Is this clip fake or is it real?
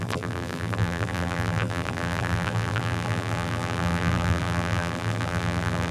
fake